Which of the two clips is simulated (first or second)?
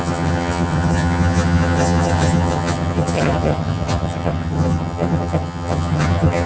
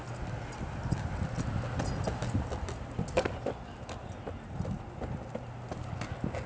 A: first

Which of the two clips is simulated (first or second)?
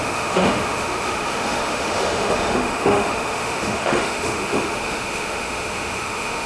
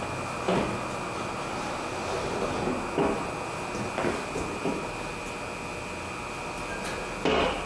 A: first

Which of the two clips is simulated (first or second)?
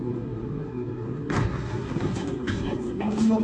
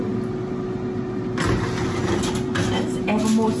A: first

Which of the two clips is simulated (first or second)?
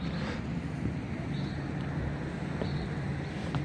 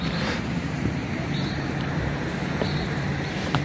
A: second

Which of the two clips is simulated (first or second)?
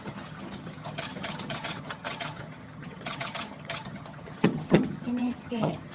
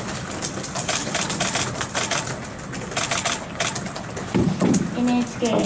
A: first